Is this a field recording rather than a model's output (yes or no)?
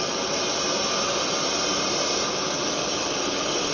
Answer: yes